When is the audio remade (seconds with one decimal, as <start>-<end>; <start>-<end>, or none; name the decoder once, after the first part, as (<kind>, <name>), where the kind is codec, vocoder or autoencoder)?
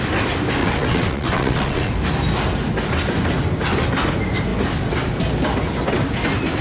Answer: 0.6-1.9 (vocoder, WaveNeXt)